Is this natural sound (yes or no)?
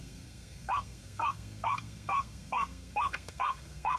no